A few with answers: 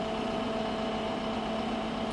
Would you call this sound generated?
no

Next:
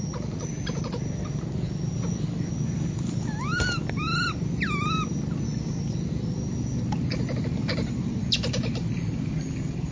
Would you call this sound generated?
no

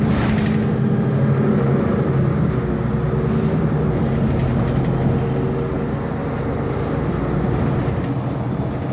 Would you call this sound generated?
no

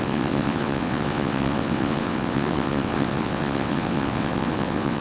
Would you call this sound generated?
yes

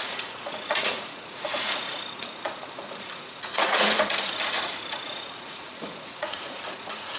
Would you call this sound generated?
yes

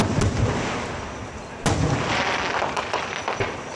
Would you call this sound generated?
no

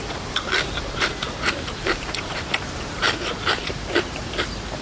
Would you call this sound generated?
yes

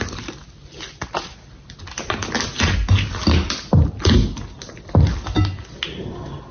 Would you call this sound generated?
no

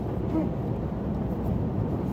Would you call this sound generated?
no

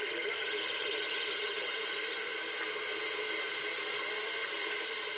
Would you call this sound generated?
no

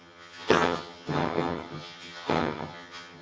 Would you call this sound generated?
yes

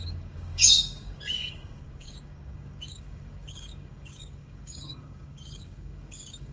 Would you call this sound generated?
yes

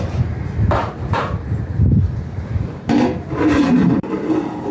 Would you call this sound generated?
yes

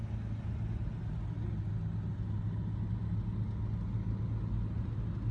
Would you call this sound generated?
no